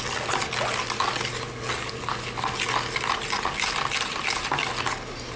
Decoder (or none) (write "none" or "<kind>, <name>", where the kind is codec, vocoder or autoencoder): none